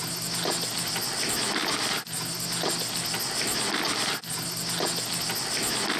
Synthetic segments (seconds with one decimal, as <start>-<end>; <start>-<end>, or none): none